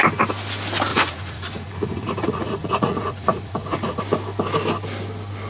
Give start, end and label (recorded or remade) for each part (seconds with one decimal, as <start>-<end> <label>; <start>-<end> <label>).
0.0-0.9 recorded; 0.9-4.0 remade; 4.0-5.5 recorded